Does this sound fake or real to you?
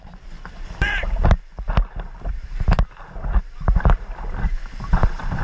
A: real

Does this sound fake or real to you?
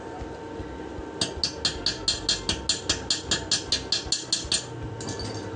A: real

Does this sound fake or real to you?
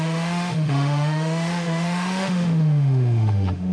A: fake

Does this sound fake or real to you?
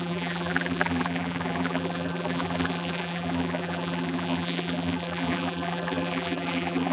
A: fake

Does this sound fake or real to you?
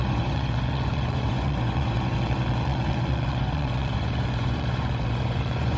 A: fake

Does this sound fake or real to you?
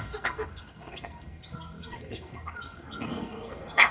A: fake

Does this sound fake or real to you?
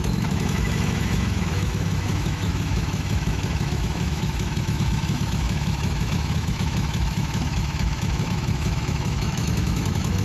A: fake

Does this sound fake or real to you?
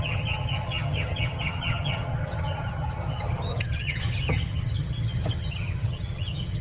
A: fake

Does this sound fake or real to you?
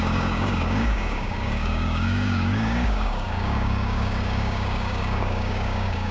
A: fake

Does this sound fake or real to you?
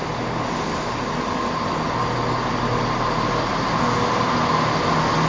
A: real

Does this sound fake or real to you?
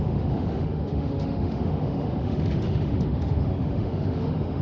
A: fake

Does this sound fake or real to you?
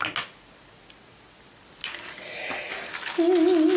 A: real